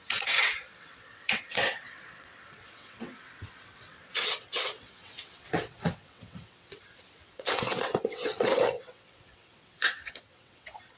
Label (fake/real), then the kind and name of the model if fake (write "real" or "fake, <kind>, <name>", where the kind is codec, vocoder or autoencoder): fake, vocoder, WaveNeXt